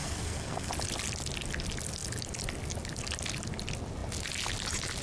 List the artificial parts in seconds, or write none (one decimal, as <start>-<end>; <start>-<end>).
0.0-0.7